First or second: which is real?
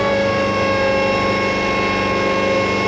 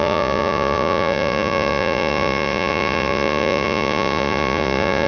first